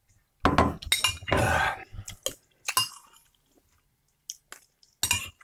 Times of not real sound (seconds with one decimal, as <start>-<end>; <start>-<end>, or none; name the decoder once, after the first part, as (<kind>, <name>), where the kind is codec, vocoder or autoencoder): none